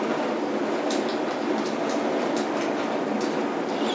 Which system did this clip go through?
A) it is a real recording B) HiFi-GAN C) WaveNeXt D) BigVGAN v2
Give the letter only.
D